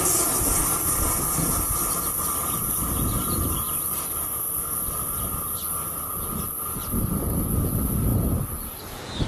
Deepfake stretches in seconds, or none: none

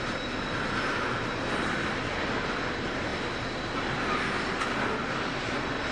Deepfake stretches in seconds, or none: none